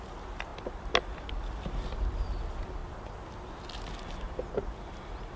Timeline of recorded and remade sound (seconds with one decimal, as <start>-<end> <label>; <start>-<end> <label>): 0.0-5.4 recorded

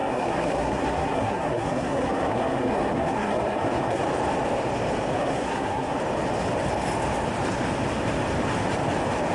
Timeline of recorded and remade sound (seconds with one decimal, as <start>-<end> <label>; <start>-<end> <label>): 0.0-4.0 remade; 4.0-5.2 recorded; 5.2-6.0 remade; 6.0-9.3 recorded

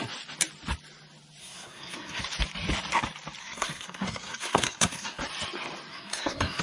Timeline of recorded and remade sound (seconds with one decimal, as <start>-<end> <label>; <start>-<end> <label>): 0.0-1.4 recorded; 1.4-2.2 remade; 2.2-3.4 recorded; 3.4-5.2 remade; 5.2-5.9 recorded; 5.9-6.6 remade

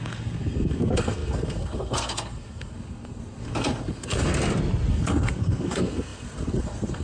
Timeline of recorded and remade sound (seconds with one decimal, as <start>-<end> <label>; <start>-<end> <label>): 0.0-4.3 remade; 4.3-4.9 recorded; 4.9-7.0 remade

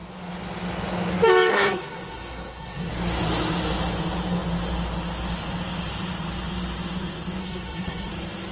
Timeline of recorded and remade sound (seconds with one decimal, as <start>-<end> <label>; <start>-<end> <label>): 0.0-1.5 recorded; 1.5-2.9 remade; 2.9-7.4 recorded; 7.4-8.1 remade; 8.1-8.5 recorded

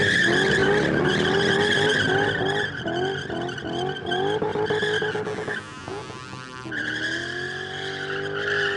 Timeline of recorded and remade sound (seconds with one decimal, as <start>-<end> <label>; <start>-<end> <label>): 0.0-8.8 recorded

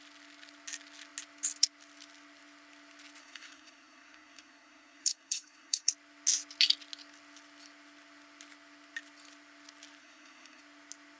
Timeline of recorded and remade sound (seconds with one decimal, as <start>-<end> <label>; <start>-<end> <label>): 0.0-3.2 recorded; 3.2-5.9 remade; 5.9-10.0 recorded; 10.0-10.6 remade; 10.6-11.2 recorded